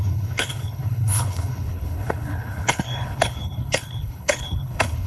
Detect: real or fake fake